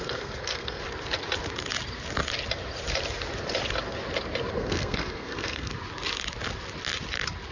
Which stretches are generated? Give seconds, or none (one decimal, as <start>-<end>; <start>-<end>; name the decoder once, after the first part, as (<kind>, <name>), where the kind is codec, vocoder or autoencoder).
0.0-0.8 (codec, SNAC); 4.5-5.7